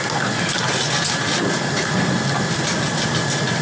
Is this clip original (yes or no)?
yes